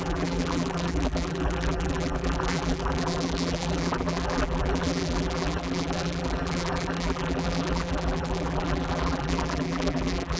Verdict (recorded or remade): remade